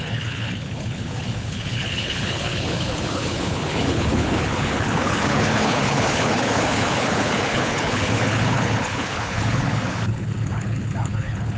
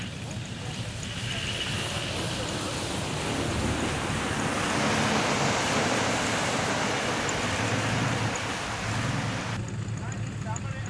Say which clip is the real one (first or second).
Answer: second